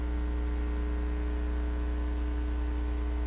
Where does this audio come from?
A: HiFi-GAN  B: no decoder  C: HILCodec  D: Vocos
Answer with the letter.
B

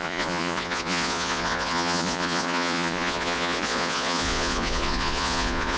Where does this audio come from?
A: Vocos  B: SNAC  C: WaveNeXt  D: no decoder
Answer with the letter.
A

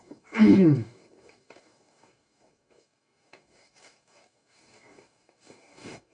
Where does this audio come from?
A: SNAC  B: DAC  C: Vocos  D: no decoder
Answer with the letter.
B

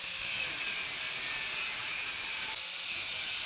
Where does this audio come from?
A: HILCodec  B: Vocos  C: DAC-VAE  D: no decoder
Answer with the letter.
D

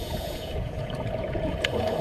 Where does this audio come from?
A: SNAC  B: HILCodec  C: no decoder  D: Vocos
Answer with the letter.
D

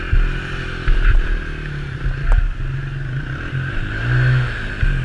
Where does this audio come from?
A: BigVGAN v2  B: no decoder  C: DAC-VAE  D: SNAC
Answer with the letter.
B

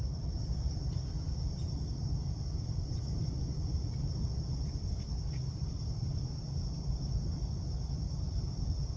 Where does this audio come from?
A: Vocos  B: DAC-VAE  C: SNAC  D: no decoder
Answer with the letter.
D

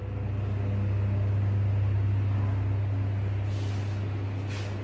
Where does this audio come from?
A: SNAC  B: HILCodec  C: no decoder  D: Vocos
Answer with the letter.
C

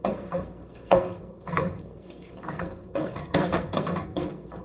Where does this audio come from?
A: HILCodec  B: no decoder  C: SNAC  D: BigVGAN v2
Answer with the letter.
C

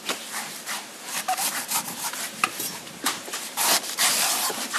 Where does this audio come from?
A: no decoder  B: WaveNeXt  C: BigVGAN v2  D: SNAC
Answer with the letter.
C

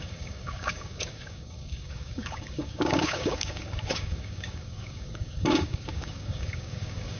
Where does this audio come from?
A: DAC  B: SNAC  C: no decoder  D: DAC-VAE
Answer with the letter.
A